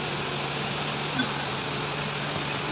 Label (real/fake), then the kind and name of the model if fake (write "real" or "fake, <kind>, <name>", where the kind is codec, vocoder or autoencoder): real